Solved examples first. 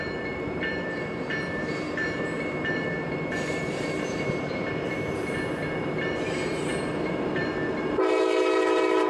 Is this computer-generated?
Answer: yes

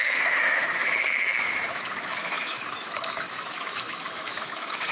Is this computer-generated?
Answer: yes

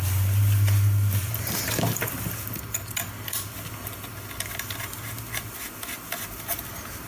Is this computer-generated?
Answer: no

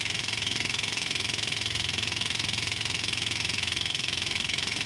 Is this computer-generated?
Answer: yes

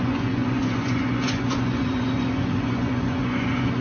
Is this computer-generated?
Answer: yes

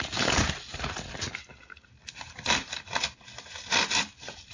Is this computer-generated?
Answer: no